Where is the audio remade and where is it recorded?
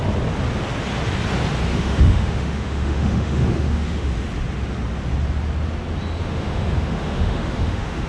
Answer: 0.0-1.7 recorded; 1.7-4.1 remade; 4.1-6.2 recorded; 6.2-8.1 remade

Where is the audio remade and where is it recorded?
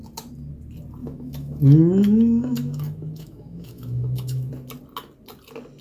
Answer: 0.0-1.0 recorded; 1.0-4.5 remade; 4.5-5.8 recorded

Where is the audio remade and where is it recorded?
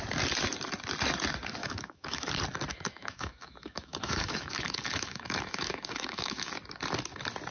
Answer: 0.0-1.6 recorded; 1.6-2.3 remade; 2.3-2.7 recorded; 2.7-6.5 remade; 6.5-7.5 recorded